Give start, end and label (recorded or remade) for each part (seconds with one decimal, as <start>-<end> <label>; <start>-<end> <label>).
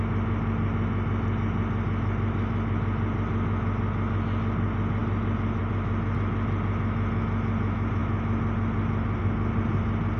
0.0-10.2 recorded